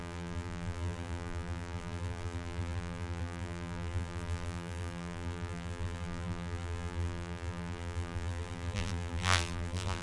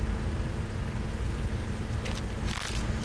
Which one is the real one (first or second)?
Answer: second